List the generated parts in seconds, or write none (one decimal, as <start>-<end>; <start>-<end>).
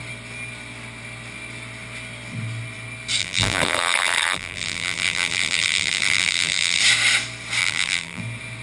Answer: 3.2-6.8; 7.6-8.2